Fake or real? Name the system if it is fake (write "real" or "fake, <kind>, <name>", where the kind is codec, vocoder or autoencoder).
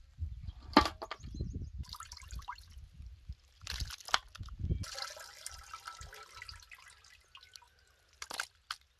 real